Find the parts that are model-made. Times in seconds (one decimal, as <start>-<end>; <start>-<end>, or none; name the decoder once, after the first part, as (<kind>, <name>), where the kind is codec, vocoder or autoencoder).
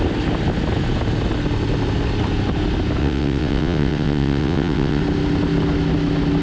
3.0-5.0 (vocoder, WaveNeXt)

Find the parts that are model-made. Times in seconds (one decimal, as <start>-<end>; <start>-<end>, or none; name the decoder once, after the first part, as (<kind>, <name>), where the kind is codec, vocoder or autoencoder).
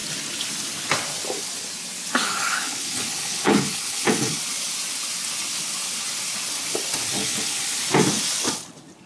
2.2-4.4 (codec, HILCodec); 7.2-7.8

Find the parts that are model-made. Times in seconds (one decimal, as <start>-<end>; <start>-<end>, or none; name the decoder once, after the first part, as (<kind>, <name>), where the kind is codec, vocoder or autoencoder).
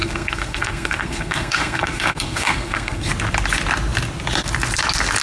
0.0-3.1 (codec, SNAC)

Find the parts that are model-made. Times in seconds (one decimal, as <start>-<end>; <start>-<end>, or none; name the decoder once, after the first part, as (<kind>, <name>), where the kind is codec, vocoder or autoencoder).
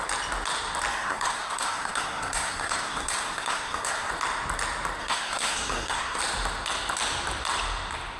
0.9-4.1 (codec, SNAC); 5.0-6.2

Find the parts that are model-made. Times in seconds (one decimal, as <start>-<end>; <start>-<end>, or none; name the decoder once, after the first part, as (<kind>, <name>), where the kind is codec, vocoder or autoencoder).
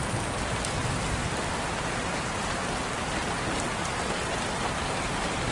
0.8-4.1 (vocoder, BigVGAN v2)